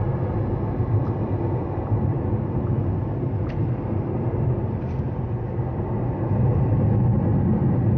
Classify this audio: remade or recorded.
recorded